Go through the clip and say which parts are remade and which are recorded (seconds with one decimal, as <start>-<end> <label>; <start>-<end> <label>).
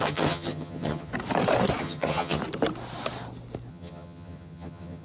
0.0-1.1 remade; 1.1-1.8 recorded; 1.8-2.4 remade; 2.4-3.7 recorded; 3.7-5.0 remade